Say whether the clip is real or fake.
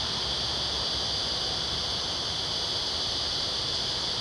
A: fake